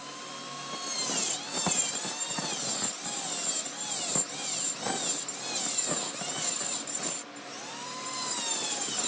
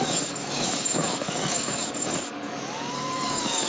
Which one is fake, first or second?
second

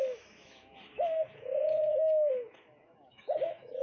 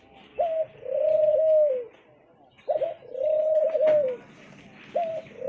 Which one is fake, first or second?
first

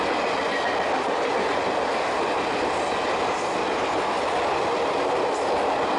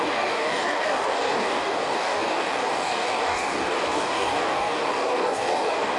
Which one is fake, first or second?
second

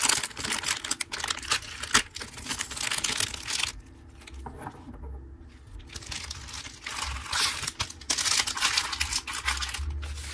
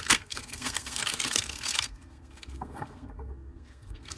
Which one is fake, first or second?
second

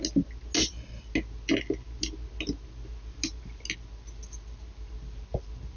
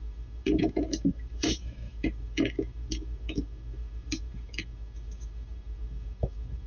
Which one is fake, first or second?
second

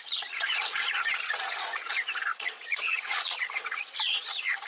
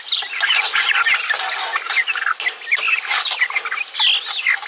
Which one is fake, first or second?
first